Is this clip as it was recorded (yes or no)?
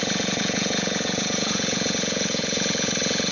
no